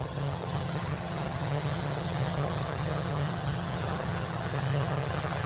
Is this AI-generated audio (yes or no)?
yes